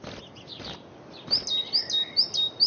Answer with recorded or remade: recorded